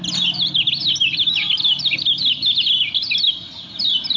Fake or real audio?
real